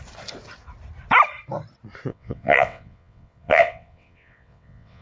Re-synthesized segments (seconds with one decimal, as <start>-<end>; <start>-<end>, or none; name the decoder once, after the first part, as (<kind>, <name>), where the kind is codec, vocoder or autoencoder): 2.1-5.0 (vocoder, WaveNeXt)